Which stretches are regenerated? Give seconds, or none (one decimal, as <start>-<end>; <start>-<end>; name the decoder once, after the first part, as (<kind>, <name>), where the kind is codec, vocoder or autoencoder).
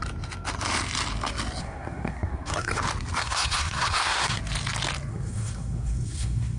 1.6-2.8 (codec, SNAC); 3.2-4.4; 5.1-6.6